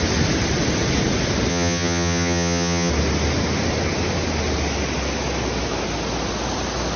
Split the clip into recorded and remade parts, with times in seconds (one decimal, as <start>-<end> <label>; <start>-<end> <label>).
0.0-1.5 recorded; 1.5-2.9 remade; 2.9-7.0 recorded